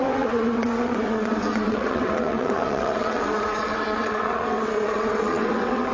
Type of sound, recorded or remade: remade